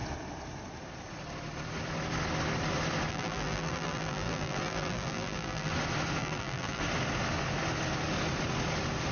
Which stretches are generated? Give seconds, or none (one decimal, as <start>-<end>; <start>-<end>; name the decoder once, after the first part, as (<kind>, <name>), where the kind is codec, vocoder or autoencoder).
3.1-5.7 (vocoder, BigVGAN v2); 6.2-6.8